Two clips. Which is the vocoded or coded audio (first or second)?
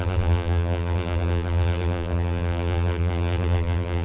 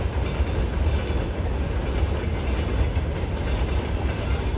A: first